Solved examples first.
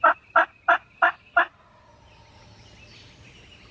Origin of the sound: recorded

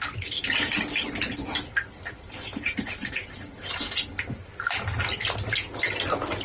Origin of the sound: recorded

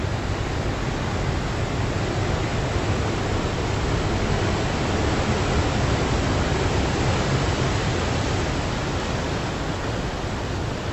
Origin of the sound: recorded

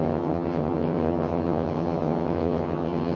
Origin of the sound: remade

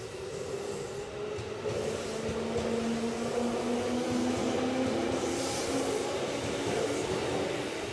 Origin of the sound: recorded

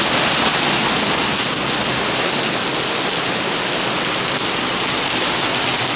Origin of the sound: recorded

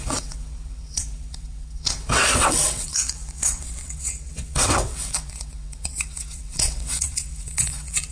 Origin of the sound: remade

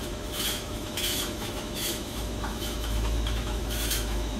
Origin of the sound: remade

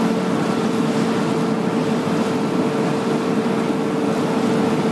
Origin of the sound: recorded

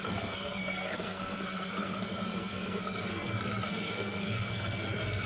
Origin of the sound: remade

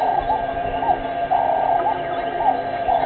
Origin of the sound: recorded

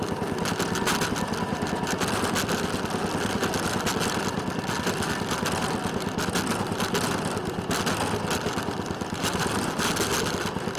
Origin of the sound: recorded